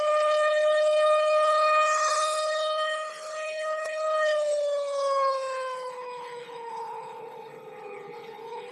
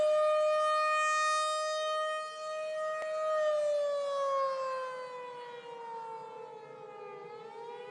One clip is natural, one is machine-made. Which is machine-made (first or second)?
first